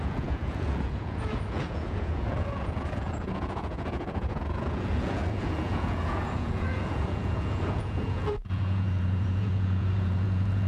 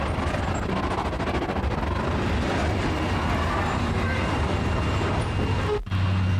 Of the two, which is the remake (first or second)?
first